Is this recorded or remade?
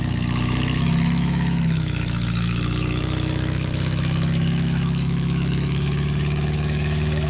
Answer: remade